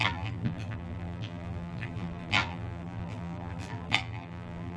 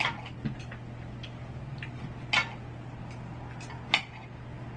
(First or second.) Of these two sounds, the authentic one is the second